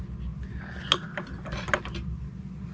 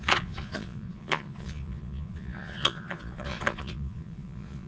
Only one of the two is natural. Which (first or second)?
first